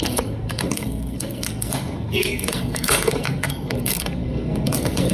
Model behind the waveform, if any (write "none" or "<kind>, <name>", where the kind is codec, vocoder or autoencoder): codec, SNAC